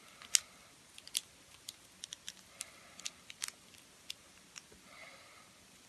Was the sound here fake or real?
real